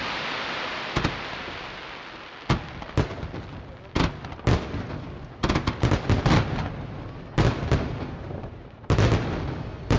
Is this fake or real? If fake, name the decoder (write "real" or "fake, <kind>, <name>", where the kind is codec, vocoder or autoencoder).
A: real